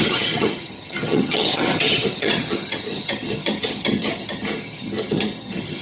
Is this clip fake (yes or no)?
yes